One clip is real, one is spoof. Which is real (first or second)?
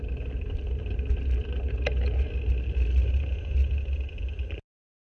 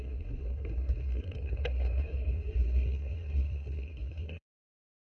first